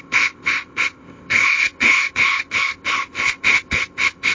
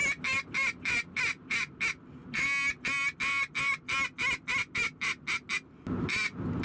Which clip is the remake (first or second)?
first